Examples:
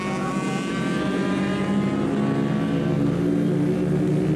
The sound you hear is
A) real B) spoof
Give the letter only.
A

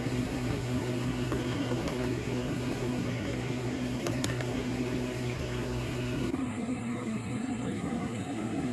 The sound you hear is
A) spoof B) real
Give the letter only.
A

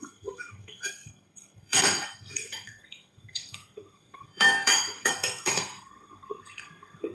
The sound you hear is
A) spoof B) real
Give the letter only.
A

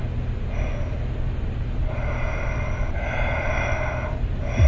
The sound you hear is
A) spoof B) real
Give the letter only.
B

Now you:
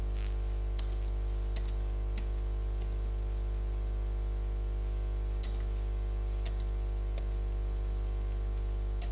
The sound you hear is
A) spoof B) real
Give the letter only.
B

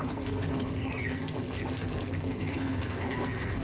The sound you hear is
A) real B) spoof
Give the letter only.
B